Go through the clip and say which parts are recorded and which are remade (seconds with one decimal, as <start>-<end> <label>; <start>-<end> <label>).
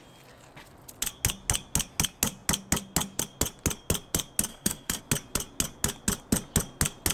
0.0-4.5 recorded; 4.5-5.0 remade; 5.0-7.1 recorded